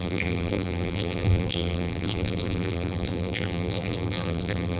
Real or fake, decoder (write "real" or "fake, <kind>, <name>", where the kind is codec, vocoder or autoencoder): fake, vocoder, BigVGAN v2